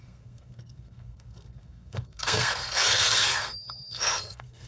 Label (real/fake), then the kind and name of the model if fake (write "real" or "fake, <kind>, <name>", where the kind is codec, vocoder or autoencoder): fake, codec, SNAC